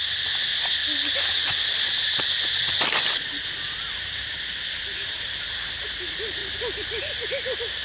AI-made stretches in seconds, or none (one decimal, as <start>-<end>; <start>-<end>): none